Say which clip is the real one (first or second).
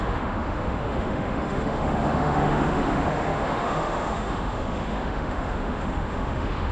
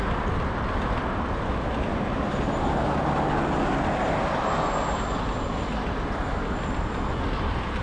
second